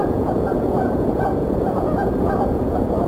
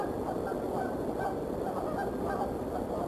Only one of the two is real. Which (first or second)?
second